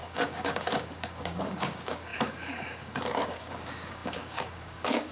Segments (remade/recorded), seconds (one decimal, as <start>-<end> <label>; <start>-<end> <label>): 0.0-5.1 remade